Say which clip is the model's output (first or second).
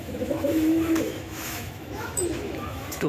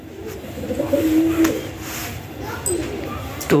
first